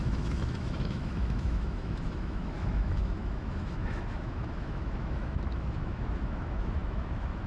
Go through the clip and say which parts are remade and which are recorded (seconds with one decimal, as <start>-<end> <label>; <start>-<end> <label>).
0.0-7.5 remade